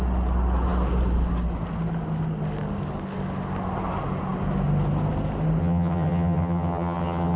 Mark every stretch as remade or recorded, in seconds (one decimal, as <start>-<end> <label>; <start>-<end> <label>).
0.0-5.6 recorded; 5.6-7.4 remade